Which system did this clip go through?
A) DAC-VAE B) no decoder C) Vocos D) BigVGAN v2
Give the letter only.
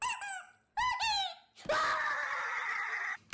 B